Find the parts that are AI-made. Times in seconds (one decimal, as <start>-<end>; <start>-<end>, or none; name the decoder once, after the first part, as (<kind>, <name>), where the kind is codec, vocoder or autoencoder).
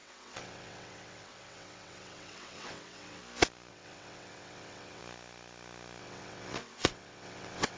0.0-3.2 (vocoder, WaveNeXt); 3.7-5.0; 6.0-7.8